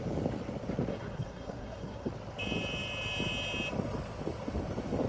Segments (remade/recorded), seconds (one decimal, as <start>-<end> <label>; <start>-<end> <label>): 0.0-0.9 recorded; 0.9-2.1 remade; 2.1-5.1 recorded